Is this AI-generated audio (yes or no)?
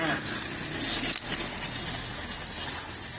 no